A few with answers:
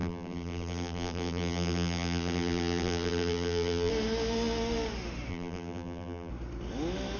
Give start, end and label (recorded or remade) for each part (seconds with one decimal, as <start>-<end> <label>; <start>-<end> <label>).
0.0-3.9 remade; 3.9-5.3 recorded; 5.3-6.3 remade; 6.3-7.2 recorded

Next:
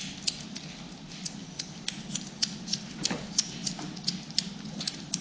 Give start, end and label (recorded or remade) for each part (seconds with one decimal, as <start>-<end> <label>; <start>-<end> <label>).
0.0-5.2 recorded

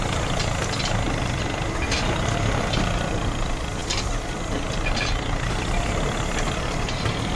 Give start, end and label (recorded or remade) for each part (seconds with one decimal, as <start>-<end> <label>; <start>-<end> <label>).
0.0-7.4 recorded